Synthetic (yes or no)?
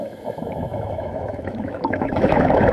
yes